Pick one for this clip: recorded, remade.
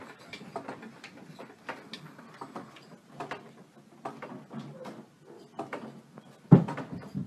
recorded